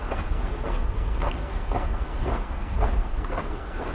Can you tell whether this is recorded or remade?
remade